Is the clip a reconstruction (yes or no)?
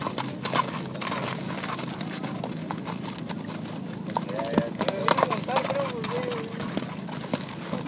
no